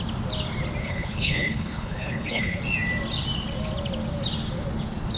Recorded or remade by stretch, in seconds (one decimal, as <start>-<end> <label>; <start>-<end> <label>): 0.0-0.8 recorded; 0.8-2.6 remade; 2.6-5.2 recorded